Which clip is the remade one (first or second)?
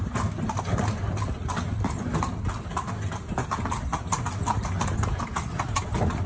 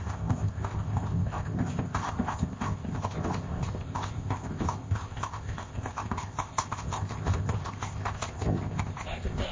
second